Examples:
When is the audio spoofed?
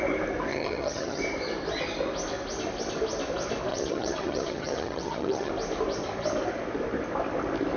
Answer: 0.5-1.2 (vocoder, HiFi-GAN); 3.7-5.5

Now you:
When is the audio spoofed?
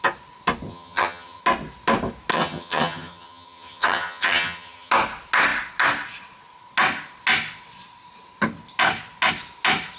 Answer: 0.7-1.4 (vocoder, HiFi-GAN); 2.3-4.9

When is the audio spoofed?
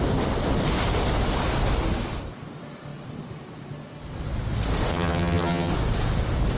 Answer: 4.9-5.7 (vocoder, HiFi-GAN)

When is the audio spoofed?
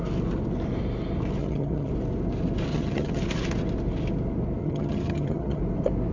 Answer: 1.4-1.9 (vocoder, HiFi-GAN); 2.7-3.2; 4.6-5.6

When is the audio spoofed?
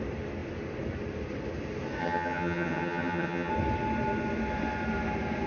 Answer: 2.0-3.5 (vocoder, HiFi-GAN)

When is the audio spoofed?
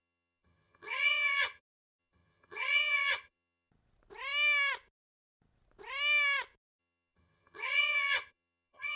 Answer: 0.0-1.6 (vocoder, HiFi-GAN); 2.0-3.7; 6.8-9.0